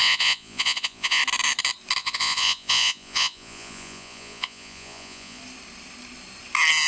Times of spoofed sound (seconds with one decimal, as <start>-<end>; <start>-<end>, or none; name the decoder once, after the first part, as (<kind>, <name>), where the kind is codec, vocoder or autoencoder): 0.0-1.2 (vocoder, Vocos); 2.0-5.4